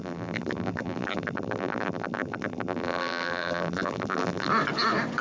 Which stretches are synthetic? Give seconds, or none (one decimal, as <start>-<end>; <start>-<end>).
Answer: 0.0-4.5